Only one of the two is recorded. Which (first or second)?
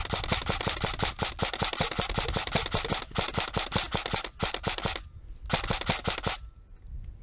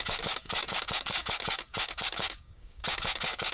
first